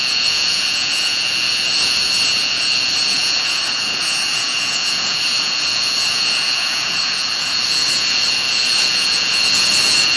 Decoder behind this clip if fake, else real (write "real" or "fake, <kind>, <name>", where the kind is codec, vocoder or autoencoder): fake, vocoder, Vocos